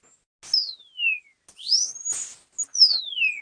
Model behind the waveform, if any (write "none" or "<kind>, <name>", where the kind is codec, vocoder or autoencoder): none